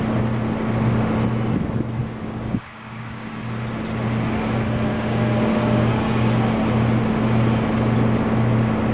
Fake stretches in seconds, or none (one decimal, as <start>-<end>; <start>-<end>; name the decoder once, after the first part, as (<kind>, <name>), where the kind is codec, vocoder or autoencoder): 2.0-3.4 (codec, DAC); 4.9-5.9